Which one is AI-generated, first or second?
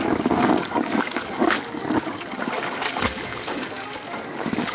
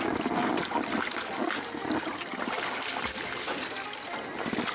first